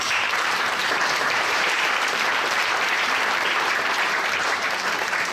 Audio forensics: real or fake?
fake